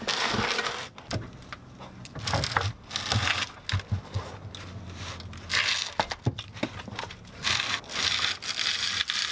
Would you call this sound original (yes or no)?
yes